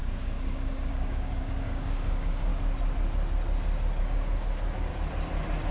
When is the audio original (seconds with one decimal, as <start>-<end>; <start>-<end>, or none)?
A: 2.5-4.0; 4.9-5.7